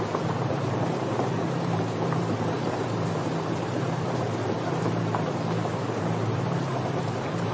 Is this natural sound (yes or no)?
no